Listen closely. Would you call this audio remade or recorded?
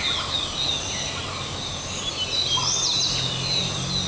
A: recorded